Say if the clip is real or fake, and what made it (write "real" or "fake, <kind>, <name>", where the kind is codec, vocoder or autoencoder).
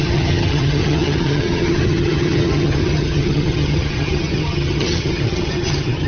fake, vocoder, HiFi-GAN